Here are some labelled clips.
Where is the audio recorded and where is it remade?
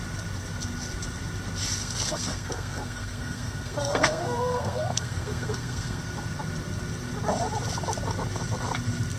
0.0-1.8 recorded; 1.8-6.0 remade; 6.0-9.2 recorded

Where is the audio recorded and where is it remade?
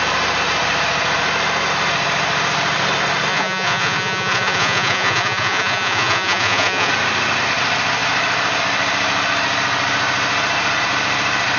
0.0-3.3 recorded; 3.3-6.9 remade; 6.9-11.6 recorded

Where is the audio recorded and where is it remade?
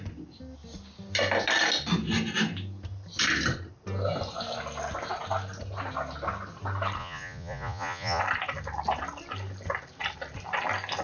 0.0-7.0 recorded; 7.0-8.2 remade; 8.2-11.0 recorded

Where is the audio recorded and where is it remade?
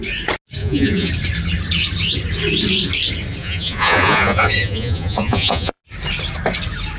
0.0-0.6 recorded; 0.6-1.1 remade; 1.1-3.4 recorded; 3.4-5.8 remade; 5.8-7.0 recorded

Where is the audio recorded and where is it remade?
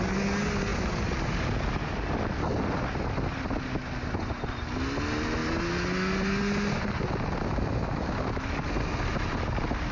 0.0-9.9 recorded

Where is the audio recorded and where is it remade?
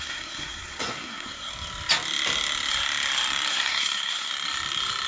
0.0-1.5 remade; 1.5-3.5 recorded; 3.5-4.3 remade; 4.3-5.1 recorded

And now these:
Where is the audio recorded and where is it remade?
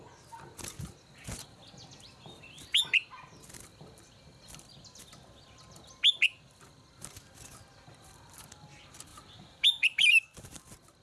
0.0-9.1 recorded; 9.1-10.6 remade; 10.6-11.0 recorded